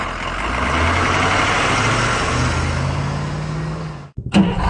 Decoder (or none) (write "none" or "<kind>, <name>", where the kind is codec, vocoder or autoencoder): none